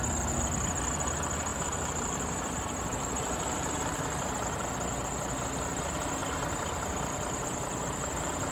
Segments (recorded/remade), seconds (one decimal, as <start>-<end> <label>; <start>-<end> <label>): 0.0-1.5 recorded; 1.5-4.6 remade; 4.6-6.2 recorded; 6.2-8.5 remade